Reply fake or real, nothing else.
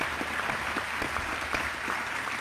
real